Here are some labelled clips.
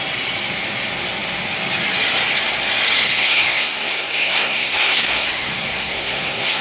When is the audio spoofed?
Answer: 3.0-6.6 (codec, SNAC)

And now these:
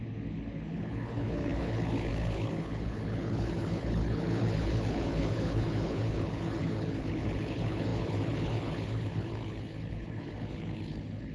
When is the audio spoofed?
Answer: 0.0-11.3 (codec, HILCodec)

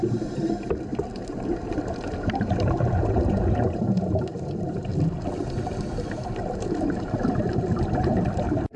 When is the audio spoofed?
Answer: 0.0-4.9 (vocoder, BigVGAN v2); 6.1-8.8

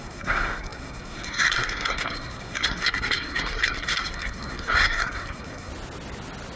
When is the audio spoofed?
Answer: 0.0-5.7 (codec, SNAC)